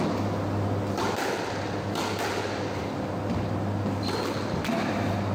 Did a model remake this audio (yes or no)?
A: no